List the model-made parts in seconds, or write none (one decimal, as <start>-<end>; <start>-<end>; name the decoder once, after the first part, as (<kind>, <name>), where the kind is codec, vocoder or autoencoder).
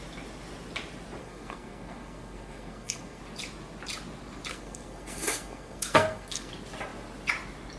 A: 1.2-3.2 (codec, SNAC); 4.5-6.5